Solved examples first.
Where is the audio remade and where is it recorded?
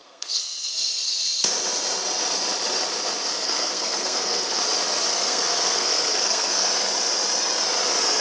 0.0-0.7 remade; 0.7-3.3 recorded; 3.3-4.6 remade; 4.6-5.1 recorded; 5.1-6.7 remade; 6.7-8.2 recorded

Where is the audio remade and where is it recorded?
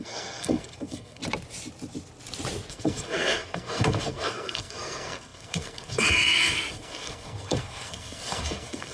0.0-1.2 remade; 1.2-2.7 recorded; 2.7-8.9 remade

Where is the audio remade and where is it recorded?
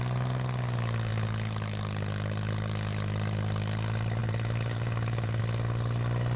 0.0-4.2 recorded; 4.2-5.4 remade; 5.4-6.4 recorded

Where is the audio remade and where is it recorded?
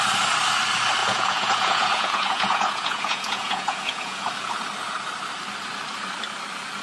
0.0-1.0 recorded; 1.0-4.3 remade; 4.3-6.8 recorded